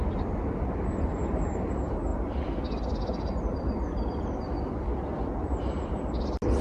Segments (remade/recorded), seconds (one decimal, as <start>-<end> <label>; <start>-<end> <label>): 0.0-6.6 recorded